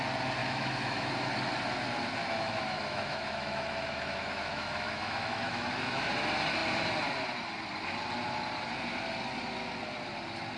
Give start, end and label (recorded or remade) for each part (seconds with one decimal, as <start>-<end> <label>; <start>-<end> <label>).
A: 0.0-0.4 recorded; 0.4-1.1 remade; 1.1-2.2 recorded; 2.2-6.1 remade; 6.1-10.6 recorded